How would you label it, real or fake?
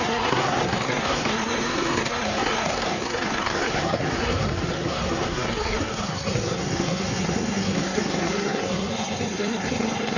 fake